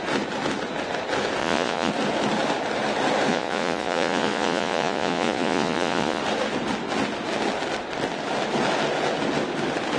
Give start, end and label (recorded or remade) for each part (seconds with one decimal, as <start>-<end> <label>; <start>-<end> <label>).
0.0-1.4 recorded; 1.4-1.9 remade; 1.9-3.3 recorded; 3.3-6.2 remade; 6.2-10.0 recorded